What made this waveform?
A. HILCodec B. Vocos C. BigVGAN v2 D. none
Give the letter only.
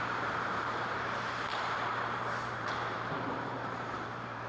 C